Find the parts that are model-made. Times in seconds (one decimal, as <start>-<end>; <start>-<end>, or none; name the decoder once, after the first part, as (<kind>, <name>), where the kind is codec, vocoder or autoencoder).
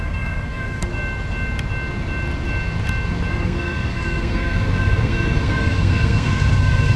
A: 0.0-0.9 (codec, SNAC); 3.3-7.0